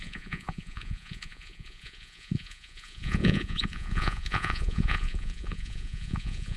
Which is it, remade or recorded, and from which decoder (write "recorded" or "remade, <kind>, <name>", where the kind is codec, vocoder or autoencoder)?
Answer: remade, vocoder, Vocos